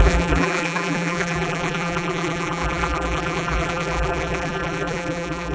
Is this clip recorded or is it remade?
remade